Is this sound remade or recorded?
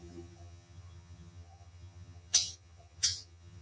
remade